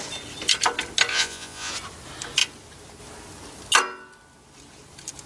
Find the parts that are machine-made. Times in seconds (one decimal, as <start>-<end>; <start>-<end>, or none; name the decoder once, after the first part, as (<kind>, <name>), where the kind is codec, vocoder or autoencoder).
1.1-1.7 (vocoder, Vocos)

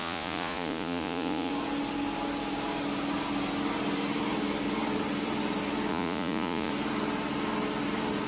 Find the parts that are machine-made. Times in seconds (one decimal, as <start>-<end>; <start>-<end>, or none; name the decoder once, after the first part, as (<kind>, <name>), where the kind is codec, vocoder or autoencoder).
0.0-1.5 (vocoder, Vocos); 5.9-6.7

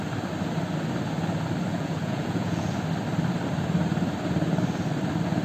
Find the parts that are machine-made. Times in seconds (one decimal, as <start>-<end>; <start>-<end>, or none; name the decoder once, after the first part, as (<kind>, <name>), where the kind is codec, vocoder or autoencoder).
1.7-2.7 (vocoder, Vocos)

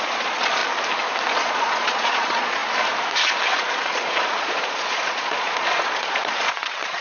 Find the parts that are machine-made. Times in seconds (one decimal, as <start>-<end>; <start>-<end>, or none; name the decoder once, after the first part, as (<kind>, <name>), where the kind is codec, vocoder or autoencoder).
0.0-0.6 (vocoder, Vocos); 1.3-2.6; 3.5-7.0